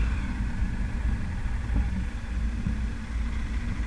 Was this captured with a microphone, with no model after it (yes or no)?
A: yes